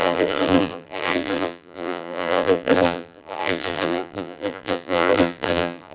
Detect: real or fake fake